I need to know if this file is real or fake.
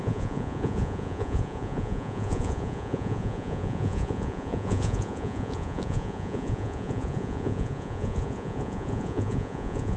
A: fake